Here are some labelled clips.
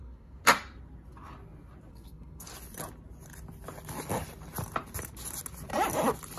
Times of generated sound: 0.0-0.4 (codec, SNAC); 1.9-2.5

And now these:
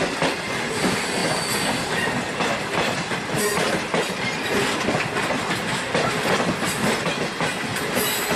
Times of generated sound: none